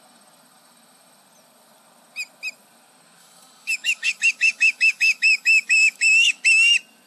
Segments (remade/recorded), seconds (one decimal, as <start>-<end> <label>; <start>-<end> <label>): 0.0-3.2 recorded; 3.2-6.4 remade; 6.4-7.1 recorded